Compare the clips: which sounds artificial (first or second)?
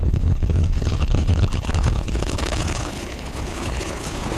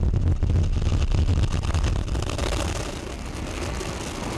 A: first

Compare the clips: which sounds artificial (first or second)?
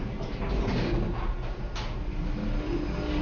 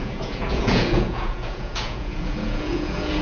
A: second